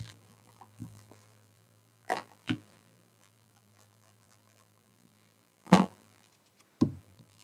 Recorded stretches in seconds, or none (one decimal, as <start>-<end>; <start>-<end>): 6.3-7.0